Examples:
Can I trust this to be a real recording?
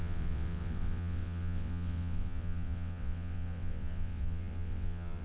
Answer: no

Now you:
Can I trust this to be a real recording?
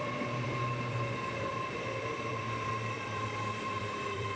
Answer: no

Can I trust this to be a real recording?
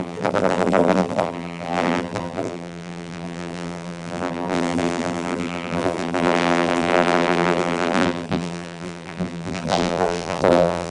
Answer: no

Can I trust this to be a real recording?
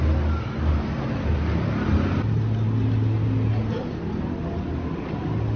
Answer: yes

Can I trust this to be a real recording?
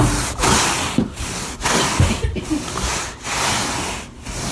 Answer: yes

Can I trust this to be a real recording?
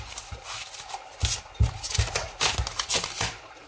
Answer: yes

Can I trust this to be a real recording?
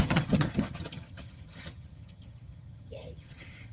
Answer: no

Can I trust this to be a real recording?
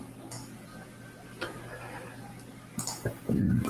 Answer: yes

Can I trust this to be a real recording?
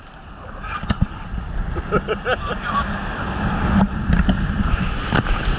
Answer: yes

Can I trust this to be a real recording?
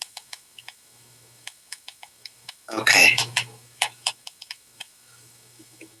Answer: no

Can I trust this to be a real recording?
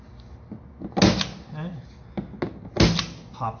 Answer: yes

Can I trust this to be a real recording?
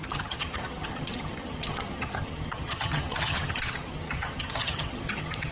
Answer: no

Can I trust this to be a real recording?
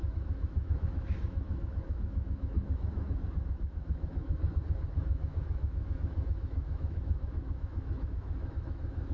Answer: no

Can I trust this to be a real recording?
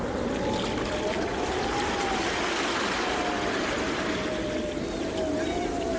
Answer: yes